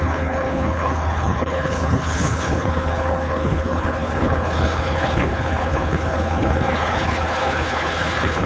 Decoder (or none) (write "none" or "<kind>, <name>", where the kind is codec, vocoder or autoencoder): codec, HILCodec